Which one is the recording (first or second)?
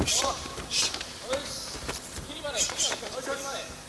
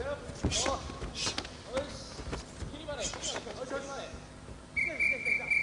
second